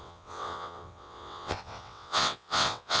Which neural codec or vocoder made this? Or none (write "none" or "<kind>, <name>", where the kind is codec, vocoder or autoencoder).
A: vocoder, WaveNeXt